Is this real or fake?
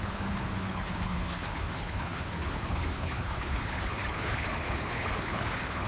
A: fake